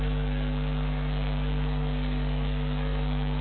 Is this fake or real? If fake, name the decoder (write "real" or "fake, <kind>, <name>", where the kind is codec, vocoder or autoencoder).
fake, codec, SNAC